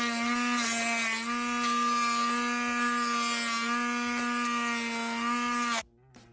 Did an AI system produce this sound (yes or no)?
no